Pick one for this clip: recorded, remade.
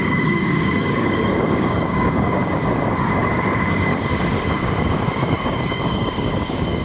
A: remade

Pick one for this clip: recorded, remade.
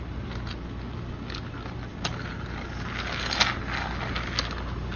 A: recorded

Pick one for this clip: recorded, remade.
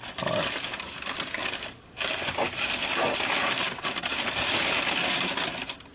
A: recorded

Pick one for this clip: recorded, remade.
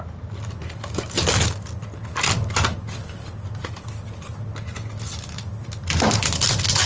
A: recorded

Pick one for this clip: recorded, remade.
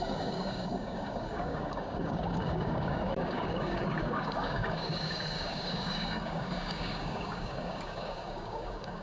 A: remade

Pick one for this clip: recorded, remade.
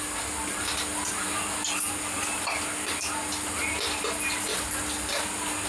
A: recorded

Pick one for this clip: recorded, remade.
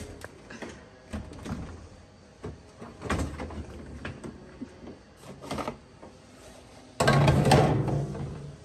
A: recorded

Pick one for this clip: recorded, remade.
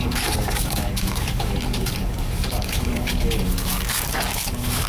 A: remade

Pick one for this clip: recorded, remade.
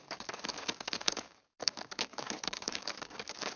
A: remade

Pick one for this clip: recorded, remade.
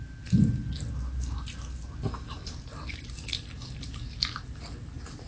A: recorded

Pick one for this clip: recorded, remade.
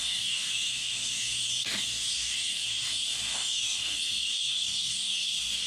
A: remade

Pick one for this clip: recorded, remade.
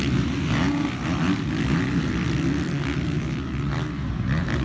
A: recorded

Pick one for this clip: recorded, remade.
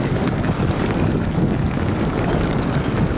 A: remade